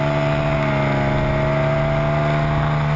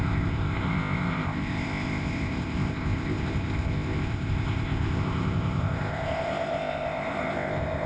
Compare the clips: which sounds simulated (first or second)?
second